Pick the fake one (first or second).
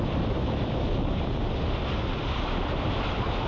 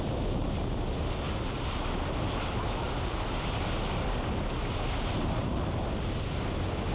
first